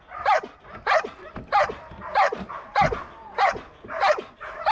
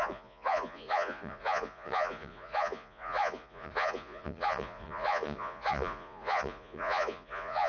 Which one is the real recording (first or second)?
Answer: first